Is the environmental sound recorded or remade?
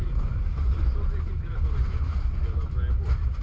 recorded